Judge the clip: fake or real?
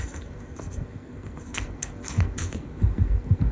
fake